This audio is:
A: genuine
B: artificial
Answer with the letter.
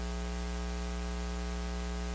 A